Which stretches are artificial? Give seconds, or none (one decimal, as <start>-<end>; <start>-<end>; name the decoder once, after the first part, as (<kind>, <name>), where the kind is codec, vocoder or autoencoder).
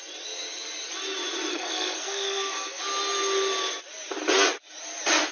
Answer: 1.5-2.8 (codec, SNAC)